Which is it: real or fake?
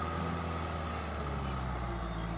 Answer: real